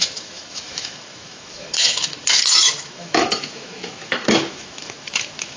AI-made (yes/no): yes